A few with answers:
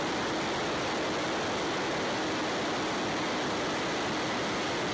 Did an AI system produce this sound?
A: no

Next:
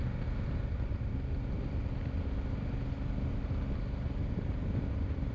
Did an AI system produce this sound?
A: no